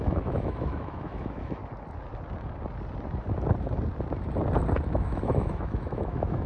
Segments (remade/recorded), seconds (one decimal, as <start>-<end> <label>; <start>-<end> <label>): 0.0-1.6 remade; 1.6-4.9 recorded; 4.9-6.5 remade